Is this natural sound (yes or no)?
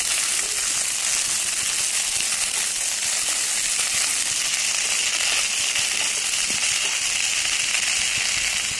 yes